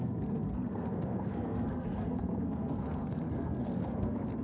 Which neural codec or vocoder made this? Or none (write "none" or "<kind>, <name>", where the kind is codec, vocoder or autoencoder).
codec, SNAC